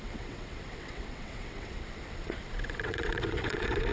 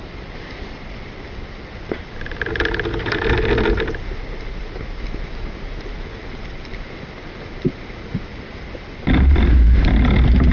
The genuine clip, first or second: second